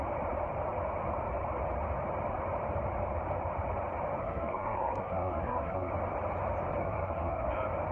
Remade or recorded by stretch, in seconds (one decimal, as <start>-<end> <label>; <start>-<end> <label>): 0.0-4.2 recorded; 4.2-5.9 remade; 5.9-6.8 recorded; 6.8-7.5 remade; 7.5-7.9 recorded